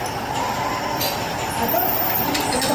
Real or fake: real